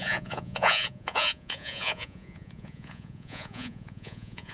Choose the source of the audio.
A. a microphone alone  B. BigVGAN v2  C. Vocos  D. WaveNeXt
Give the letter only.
C